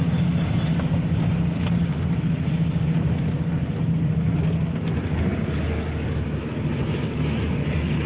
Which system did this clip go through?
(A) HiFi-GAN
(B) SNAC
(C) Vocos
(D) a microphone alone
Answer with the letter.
D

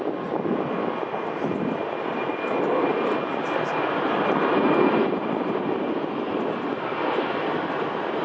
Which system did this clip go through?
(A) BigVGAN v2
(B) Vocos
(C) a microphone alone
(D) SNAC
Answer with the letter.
C